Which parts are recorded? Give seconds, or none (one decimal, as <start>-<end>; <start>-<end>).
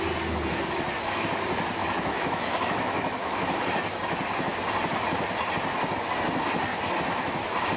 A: 0.0-1.8; 3.6-7.8